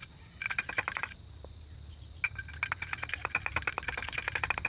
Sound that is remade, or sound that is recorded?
recorded